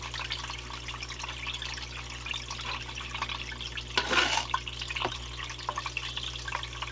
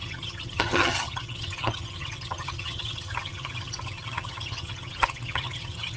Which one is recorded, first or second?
first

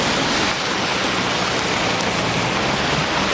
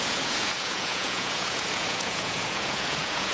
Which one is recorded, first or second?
first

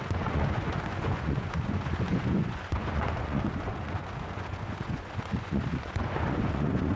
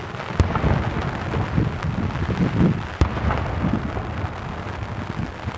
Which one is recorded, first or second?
second